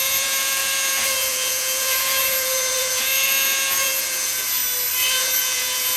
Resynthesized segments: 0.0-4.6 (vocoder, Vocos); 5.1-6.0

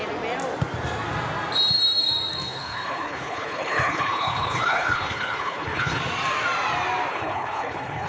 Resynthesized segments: 2.5-6.0 (codec, HILCodec); 7.1-8.1

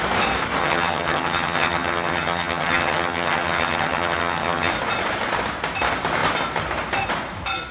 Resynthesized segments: 0.6-4.7 (vocoder, HiFi-GAN)

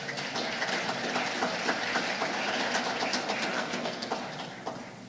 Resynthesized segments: 3.5-4.1 (codec, SNAC)

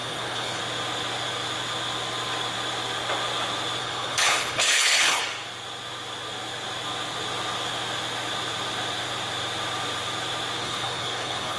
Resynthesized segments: 0.0-0.6 (codec, HILCodec); 3.8-5.2; 10.6-11.6